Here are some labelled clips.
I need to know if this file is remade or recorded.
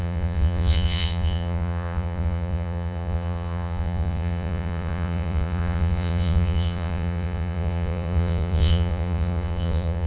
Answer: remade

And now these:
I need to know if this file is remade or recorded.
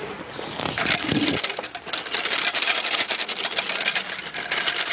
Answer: recorded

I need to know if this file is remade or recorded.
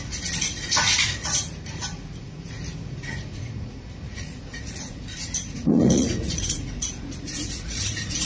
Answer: remade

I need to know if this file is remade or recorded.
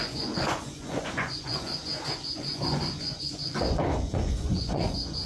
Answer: remade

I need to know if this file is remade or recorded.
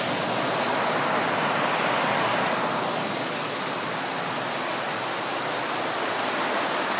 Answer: recorded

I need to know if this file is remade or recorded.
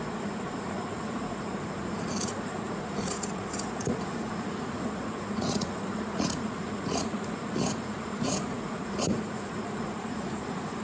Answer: remade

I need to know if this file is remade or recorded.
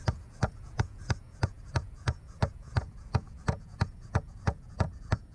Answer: remade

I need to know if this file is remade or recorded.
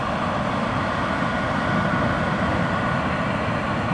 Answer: recorded